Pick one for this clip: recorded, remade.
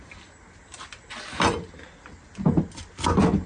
recorded